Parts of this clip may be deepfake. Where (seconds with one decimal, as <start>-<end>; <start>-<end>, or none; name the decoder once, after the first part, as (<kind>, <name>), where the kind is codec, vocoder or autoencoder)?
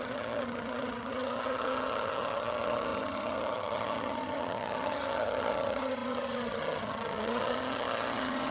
0.0-8.5 (vocoder, HiFi-GAN)